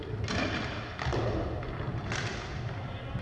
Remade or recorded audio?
recorded